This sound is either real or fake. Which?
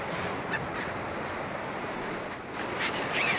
real